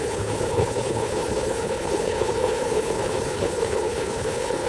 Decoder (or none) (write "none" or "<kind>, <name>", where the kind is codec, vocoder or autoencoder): codec, HILCodec